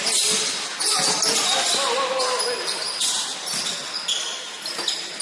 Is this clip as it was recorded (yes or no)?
yes